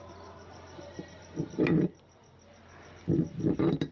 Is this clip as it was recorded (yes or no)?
yes